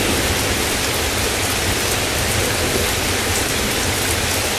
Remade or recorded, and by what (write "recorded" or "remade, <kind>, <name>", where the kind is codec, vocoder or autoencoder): recorded